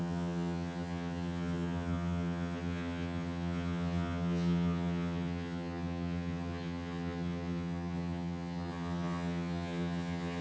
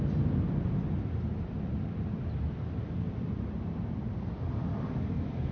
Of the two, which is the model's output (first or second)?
first